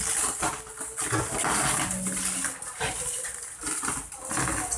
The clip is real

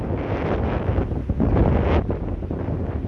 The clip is real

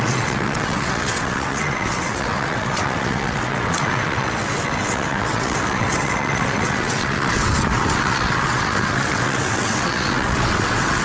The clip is fake